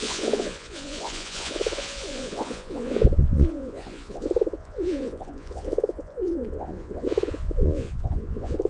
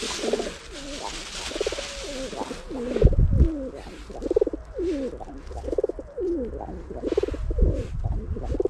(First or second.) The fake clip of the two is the first